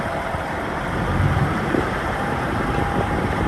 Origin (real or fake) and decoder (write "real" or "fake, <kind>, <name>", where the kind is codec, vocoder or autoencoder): fake, vocoder, BigVGAN v2